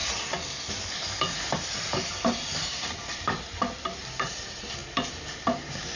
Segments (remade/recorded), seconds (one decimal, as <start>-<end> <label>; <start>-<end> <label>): 0.0-6.0 remade

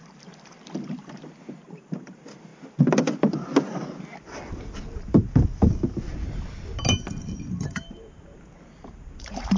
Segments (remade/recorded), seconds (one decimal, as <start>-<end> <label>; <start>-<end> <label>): 0.0-2.5 remade; 2.5-7.5 recorded; 7.5-9.6 remade

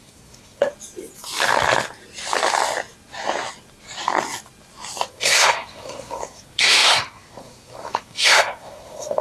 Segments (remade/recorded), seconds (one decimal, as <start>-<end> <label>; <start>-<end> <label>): 0.0-0.7 remade; 0.7-5.1 recorded; 5.1-9.2 remade

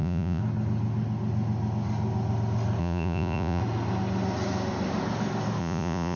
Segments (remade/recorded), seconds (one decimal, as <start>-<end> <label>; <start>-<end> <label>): 0.0-0.4 remade; 0.4-2.8 recorded; 2.8-3.6 remade; 3.6-5.6 recorded; 5.6-6.2 remade

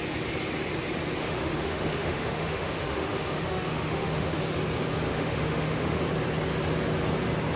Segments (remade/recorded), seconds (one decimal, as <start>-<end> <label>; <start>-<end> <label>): 0.0-1.2 recorded; 1.2-4.4 remade; 4.4-5.1 recorded; 5.1-6.0 remade; 6.0-7.6 recorded

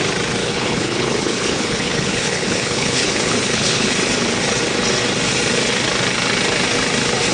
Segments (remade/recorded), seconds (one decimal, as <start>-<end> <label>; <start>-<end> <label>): 0.0-0.4 recorded; 0.4-4.0 remade; 4.0-7.3 recorded

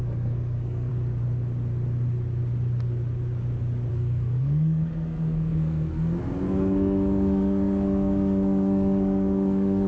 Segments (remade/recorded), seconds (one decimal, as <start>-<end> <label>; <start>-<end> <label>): 0.0-0.9 remade; 0.9-3.9 recorded; 3.9-9.9 remade